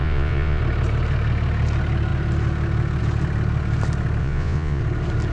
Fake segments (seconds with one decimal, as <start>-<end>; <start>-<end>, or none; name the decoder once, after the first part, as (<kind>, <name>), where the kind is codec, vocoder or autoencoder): 0.0-0.6 (vocoder, Vocos); 4.2-4.8